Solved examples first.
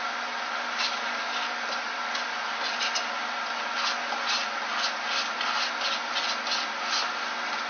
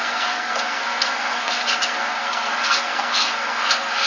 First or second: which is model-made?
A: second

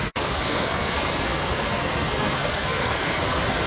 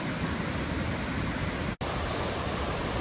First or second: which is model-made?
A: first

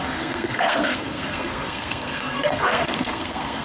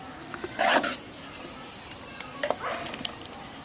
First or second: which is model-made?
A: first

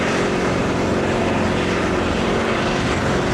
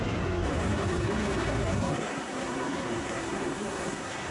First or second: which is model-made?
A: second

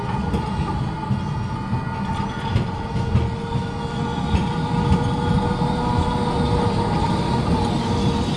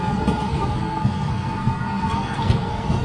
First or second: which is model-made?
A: second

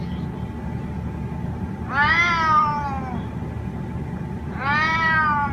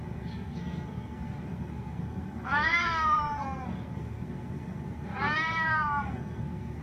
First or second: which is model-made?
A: second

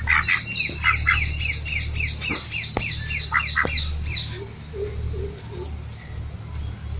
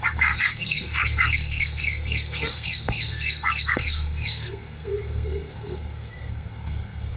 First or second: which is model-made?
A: second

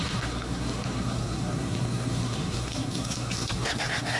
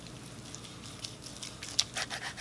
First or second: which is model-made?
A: first